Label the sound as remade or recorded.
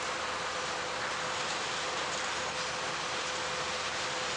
recorded